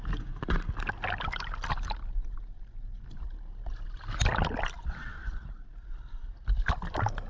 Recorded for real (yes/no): yes